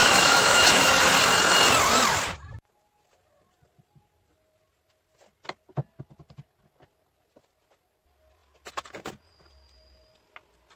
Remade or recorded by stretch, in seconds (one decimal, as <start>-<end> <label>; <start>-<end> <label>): 0.0-0.9 remade; 0.9-10.8 recorded